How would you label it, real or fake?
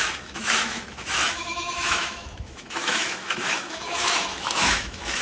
fake